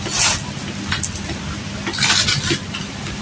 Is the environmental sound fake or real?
real